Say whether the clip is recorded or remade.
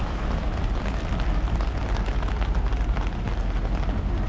recorded